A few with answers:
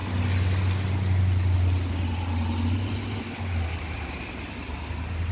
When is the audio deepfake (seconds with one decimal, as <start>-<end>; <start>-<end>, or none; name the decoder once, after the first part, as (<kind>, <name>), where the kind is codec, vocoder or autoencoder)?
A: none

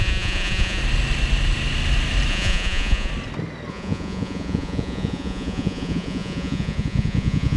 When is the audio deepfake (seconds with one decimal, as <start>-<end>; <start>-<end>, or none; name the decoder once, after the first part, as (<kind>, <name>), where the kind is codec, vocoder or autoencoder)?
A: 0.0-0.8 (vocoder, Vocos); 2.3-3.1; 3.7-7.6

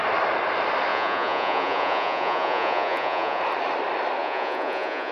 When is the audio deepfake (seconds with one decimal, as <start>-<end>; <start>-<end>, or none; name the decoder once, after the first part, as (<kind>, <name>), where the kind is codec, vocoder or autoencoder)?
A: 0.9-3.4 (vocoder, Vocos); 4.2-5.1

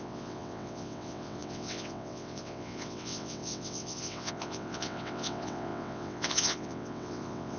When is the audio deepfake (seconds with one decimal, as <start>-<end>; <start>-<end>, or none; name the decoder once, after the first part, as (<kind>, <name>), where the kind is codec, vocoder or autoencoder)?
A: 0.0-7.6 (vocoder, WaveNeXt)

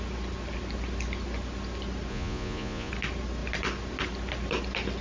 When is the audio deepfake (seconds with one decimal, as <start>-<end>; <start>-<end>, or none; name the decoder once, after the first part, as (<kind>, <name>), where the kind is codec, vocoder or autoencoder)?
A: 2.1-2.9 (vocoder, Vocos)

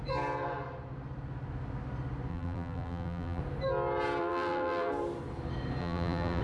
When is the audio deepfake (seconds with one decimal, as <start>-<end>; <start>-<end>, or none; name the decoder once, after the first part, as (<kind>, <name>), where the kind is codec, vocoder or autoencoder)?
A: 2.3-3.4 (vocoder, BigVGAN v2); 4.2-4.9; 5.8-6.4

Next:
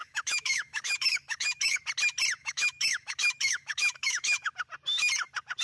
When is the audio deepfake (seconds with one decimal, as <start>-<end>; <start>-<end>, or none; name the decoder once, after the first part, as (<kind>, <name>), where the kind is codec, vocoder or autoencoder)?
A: 0.0-1.8 (autoencoder, DAC-VAE); 2.4-4.5

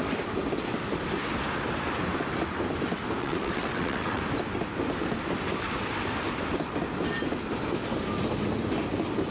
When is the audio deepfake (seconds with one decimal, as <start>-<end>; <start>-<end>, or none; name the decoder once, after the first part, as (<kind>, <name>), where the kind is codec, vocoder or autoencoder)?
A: 3.2-4.2 (vocoder, WaveNeXt)